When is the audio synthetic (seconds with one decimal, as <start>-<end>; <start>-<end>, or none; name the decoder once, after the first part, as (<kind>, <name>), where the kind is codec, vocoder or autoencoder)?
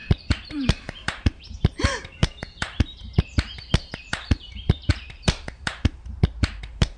0.0-4.9 (vocoder, BigVGAN v2); 5.6-7.0